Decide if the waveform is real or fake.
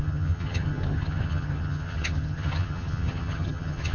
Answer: fake